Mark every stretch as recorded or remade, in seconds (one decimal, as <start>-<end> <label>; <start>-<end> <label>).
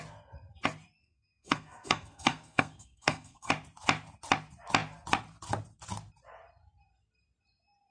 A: 0.0-1.0 recorded; 1.0-3.5 remade; 3.5-7.9 recorded